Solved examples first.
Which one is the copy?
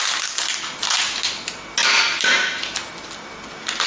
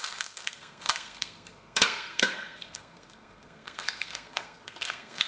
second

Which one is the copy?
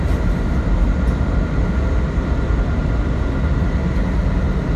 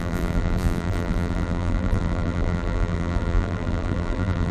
second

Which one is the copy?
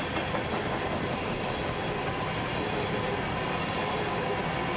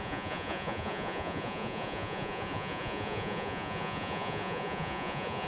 second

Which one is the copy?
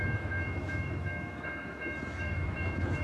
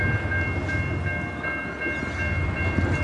first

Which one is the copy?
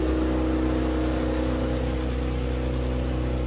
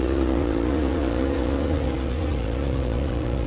second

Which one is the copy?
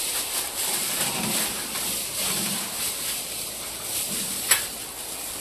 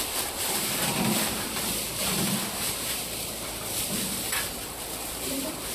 second